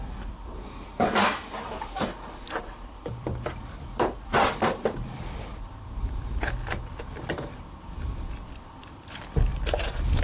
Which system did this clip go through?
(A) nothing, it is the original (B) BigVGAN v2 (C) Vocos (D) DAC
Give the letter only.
B